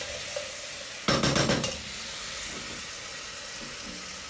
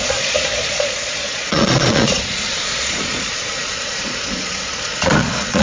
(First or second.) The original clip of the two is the first